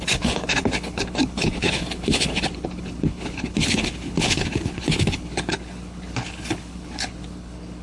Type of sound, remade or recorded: remade